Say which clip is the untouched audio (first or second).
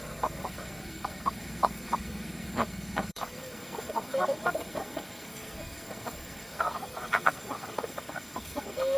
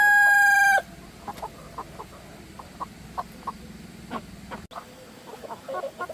second